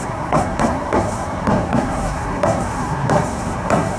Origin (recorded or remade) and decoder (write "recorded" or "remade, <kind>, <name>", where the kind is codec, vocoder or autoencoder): remade, codec, SNAC